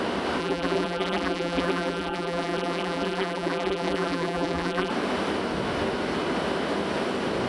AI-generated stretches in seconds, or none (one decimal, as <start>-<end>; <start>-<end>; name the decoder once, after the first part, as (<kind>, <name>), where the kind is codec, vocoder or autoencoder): 0.4-4.9 (vocoder, BigVGAN v2)